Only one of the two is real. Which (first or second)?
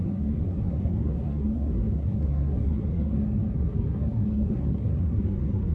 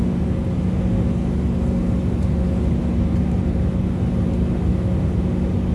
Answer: second